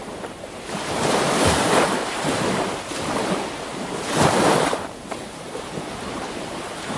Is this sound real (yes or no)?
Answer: no